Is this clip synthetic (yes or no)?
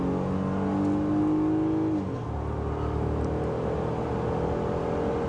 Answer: no